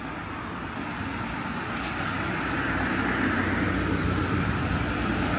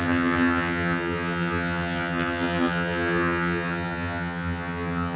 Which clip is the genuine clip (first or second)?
first